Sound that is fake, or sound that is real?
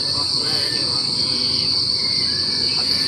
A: fake